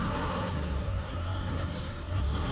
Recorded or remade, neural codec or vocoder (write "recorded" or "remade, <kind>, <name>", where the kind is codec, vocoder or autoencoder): remade, codec, SNAC